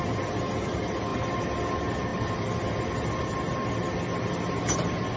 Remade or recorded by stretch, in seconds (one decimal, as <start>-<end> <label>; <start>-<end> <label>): 0.0-5.2 recorded